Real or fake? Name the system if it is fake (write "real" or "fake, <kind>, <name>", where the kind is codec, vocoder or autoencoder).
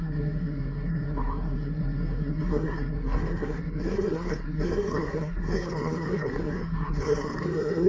fake, codec, SNAC